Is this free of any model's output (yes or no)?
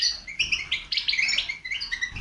yes